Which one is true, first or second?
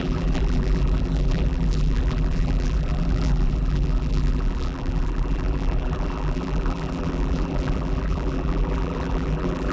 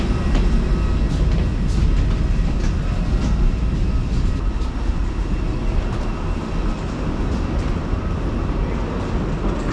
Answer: second